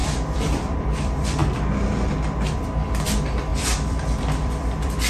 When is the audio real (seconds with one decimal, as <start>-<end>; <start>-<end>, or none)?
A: 1.4-2.5